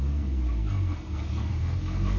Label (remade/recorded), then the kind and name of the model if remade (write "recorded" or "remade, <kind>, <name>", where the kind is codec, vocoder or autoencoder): remade, codec, SNAC